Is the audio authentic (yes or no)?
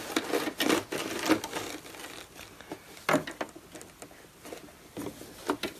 yes